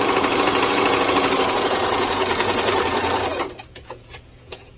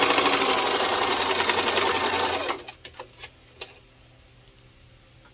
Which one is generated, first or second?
first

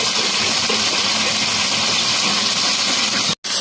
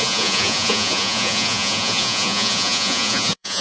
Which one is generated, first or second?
second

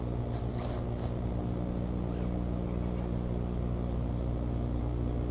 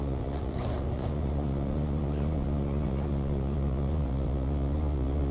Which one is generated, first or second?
second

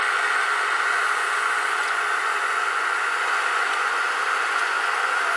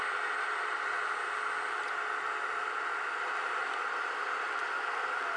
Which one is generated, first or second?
first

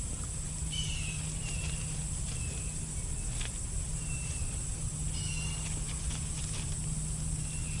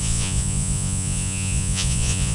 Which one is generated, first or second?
second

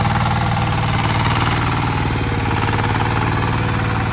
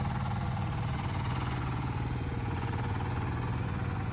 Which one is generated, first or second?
second